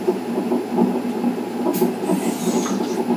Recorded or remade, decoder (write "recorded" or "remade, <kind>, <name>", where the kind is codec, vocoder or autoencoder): recorded